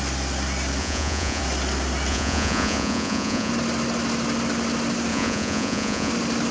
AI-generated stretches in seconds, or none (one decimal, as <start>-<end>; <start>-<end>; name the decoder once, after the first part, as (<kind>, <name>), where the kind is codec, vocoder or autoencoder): 0.8-1.4 (vocoder, Vocos); 2.1-3.5; 5.1-6.1

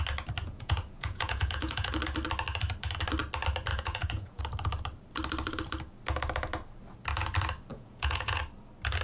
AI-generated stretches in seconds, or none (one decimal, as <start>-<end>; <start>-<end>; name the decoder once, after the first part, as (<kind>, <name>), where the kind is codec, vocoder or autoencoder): 0.4-1.9 (vocoder, Vocos); 3.7-4.4; 7.7-8.4

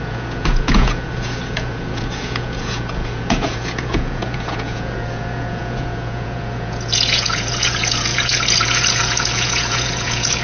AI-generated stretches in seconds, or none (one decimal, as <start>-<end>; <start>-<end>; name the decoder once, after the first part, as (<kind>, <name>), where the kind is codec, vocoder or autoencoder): 0.0-10.4 (vocoder, Vocos)

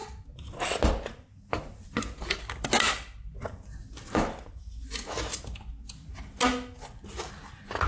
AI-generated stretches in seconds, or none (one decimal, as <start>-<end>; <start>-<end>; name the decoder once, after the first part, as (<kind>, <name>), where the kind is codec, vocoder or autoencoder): none

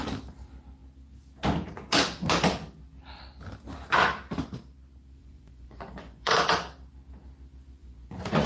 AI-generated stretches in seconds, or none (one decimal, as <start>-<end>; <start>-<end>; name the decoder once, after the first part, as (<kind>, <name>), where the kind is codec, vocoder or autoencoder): 5.2-6.4 (vocoder, Vocos); 7.8-8.5

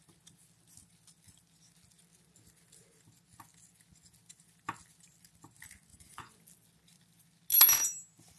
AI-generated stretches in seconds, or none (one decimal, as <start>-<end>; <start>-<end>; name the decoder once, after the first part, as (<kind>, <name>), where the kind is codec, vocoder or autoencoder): 5.9-6.4 (vocoder, Vocos)

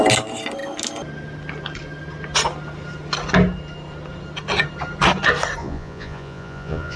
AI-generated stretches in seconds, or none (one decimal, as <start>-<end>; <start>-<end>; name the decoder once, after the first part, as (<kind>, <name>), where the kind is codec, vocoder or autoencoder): 5.6-7.0 (vocoder, Vocos)